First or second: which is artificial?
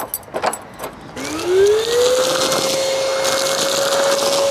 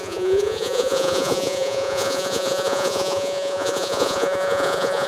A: second